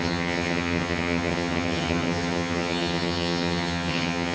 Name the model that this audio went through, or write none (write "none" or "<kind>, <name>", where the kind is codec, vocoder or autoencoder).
vocoder, HiFi-GAN